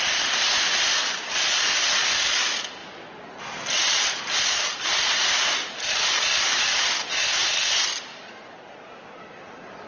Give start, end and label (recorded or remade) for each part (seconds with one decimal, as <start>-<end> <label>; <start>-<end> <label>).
0.0-9.9 recorded